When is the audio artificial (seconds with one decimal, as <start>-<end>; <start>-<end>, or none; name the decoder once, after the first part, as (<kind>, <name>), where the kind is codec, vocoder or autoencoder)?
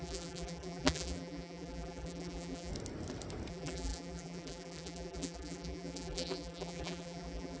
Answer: 0.0-2.7 (vocoder, BigVGAN v2); 3.5-7.6